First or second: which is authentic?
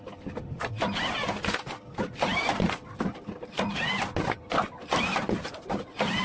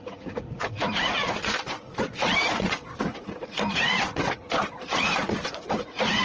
first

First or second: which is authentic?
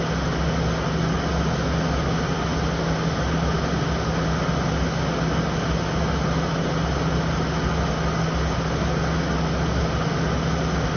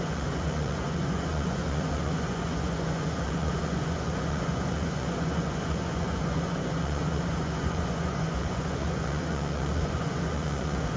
first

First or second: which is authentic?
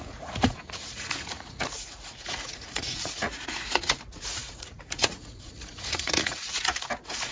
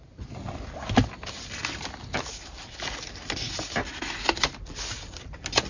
second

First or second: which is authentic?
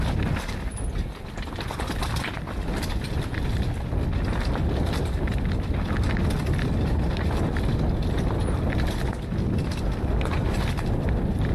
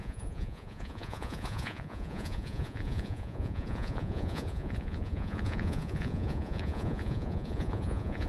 first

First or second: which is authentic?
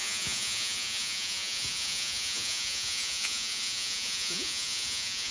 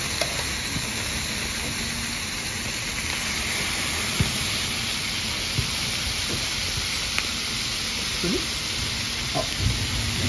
second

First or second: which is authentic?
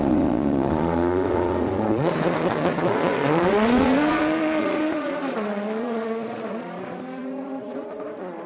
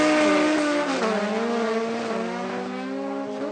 second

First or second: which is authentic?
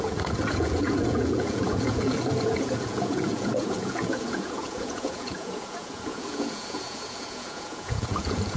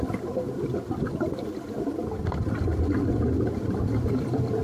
second